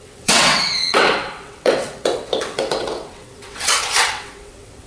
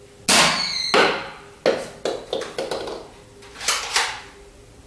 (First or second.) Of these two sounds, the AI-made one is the first